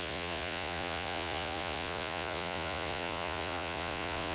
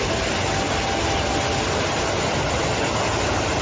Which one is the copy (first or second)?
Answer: first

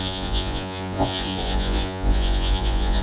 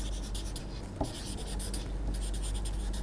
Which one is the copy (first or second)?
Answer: first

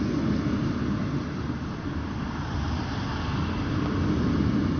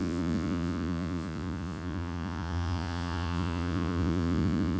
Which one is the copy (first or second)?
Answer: second